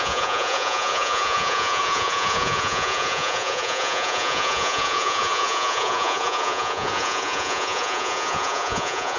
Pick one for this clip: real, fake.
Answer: fake